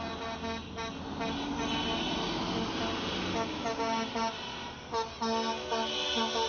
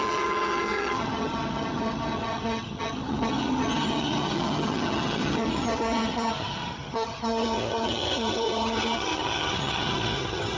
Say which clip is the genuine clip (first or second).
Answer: first